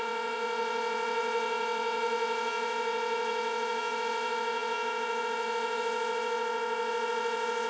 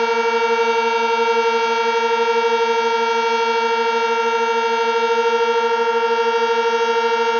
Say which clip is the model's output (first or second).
first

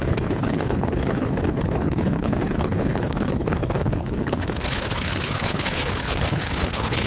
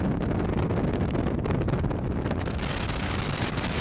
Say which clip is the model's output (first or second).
first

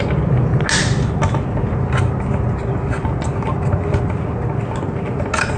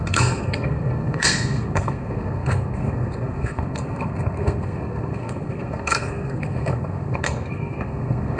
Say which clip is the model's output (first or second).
second